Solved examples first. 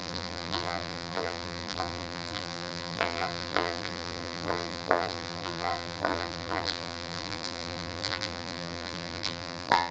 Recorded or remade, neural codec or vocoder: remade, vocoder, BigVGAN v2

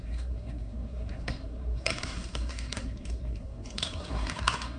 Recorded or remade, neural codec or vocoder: remade, codec, SNAC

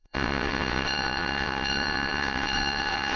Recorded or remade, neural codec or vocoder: remade, vocoder, WaveNeXt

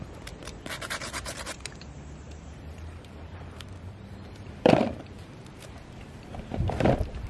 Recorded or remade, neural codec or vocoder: remade, vocoder, BigVGAN v2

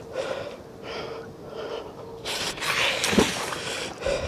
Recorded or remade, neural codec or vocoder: recorded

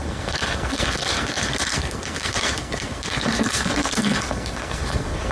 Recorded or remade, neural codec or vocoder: remade, codec, SNAC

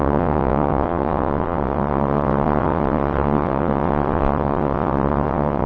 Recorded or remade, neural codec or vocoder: remade, vocoder, WaveNeXt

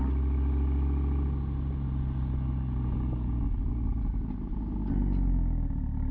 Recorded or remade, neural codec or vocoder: recorded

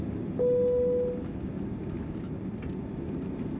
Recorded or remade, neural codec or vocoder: recorded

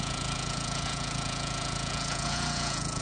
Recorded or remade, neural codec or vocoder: remade, vocoder, Vocos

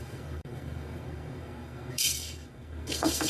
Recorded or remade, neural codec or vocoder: remade, codec, SNAC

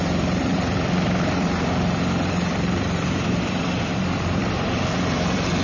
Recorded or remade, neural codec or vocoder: remade, vocoder, BigVGAN v2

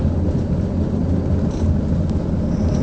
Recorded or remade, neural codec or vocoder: recorded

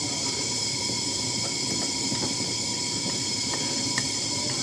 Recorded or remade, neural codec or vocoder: recorded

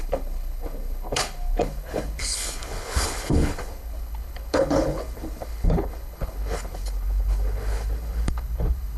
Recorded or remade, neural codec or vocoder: remade, codec, HILCodec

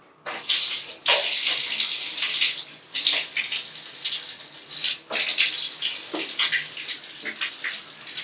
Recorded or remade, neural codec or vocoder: recorded